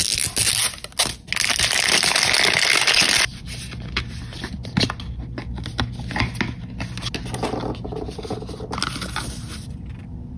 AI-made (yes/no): no